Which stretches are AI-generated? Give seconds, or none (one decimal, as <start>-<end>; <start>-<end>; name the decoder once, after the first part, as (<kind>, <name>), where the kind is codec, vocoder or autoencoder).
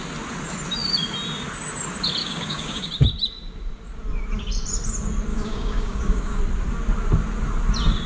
2.2-2.9 (codec, DAC); 5.3-6.4